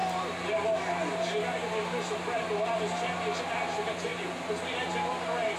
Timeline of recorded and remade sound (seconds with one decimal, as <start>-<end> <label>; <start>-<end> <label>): 0.0-5.6 recorded